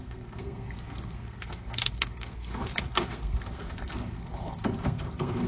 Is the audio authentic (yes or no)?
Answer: no